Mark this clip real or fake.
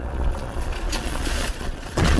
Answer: fake